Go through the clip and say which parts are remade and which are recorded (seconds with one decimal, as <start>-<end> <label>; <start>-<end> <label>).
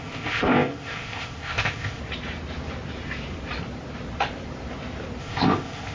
0.0-2.0 remade; 2.0-5.2 recorded; 5.2-5.9 remade